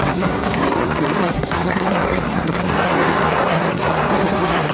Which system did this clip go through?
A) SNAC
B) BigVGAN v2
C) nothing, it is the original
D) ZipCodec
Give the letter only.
A